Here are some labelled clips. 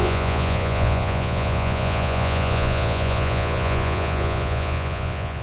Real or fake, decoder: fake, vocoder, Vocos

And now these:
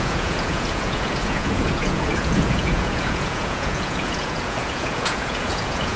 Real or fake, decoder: fake, vocoder, Vocos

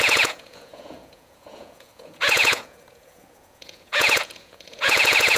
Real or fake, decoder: fake, vocoder, Vocos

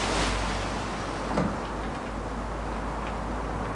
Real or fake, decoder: real